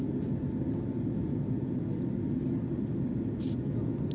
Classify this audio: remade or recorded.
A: recorded